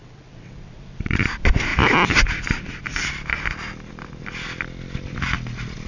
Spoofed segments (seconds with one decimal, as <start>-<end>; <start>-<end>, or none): 0.0-1.2